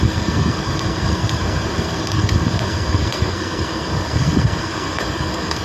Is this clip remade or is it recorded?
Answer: remade